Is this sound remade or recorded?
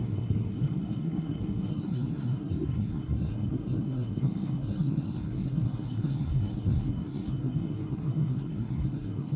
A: remade